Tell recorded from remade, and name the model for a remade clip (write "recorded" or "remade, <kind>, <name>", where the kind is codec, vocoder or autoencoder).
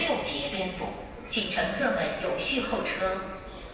remade, vocoder, Vocos